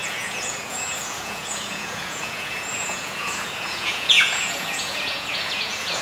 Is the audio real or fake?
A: fake